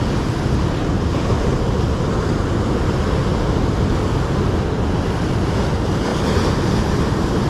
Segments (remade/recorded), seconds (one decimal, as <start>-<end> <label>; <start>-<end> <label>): 0.0-7.5 recorded

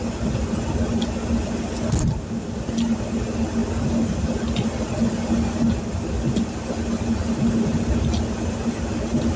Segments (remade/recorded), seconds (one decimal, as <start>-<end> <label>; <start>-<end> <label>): 0.0-9.4 recorded

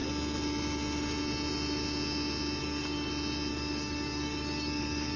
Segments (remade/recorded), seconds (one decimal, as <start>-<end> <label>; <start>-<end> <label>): 0.0-2.6 recorded; 2.6-3.1 remade; 3.1-3.5 recorded; 3.5-5.2 remade

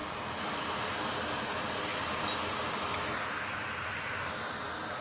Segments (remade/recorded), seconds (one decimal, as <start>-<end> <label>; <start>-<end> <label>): 0.0-5.0 recorded